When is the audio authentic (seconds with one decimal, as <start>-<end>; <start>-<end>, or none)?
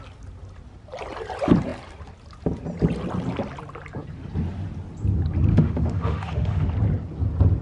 0.0-5.5; 6.7-7.6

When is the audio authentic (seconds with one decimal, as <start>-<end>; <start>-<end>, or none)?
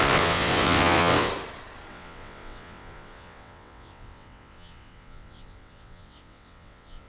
1.3-1.9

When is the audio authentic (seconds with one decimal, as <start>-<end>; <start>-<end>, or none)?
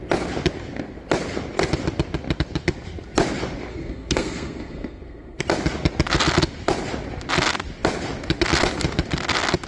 0.0-3.7; 5.4-9.7